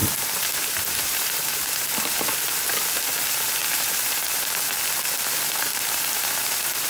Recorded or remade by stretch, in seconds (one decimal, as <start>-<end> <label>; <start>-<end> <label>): 0.0-2.2 remade; 2.2-3.6 recorded; 3.6-4.2 remade; 4.2-5.7 recorded; 5.7-6.9 remade